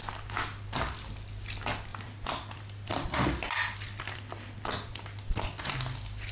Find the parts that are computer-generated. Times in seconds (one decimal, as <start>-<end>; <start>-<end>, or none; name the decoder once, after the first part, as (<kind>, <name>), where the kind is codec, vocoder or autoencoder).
1.9-5.7 (vocoder, BigVGAN v2)